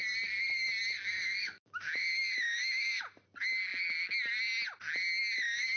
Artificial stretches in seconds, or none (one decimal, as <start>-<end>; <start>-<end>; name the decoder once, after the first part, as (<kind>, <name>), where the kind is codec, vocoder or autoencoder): 1.2-3.0 (autoencoder, DAC-VAE)